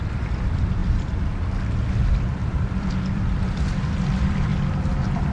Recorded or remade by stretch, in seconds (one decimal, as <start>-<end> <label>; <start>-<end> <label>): 0.0-0.8 remade; 0.8-2.0 recorded; 2.0-4.5 remade; 4.5-5.3 recorded